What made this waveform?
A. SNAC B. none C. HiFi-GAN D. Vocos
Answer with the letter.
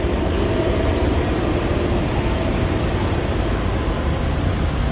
B